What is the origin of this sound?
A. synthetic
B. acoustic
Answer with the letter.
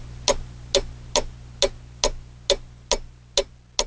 B